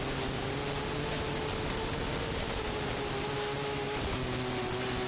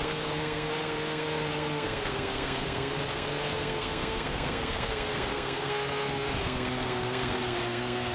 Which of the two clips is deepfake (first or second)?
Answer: second